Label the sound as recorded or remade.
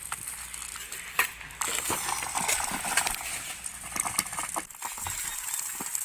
remade